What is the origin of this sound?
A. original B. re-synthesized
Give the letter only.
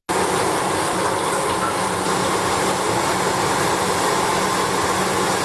A